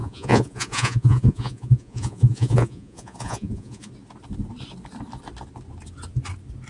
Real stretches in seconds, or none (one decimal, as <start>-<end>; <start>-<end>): 3.9-6.7

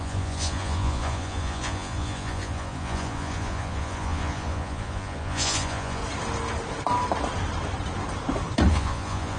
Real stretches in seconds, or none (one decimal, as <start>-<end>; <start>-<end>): 6.0-8.7

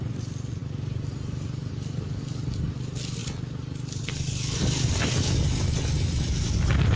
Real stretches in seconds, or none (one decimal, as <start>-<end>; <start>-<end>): 0.0-7.0

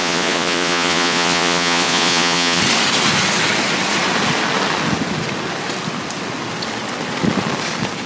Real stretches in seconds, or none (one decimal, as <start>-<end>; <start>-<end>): 2.6-8.1

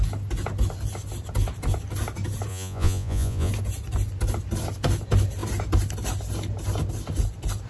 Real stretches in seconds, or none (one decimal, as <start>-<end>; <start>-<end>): 0.0-2.5; 3.5-7.7

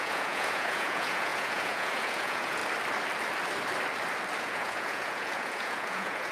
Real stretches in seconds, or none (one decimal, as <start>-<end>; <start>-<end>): 2.6-4.4